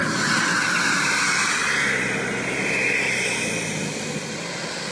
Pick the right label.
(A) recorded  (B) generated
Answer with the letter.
A